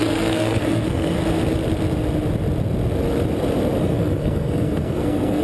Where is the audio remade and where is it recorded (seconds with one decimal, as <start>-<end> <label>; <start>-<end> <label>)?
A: 0.0-1.2 remade; 1.2-3.8 recorded; 3.8-5.4 remade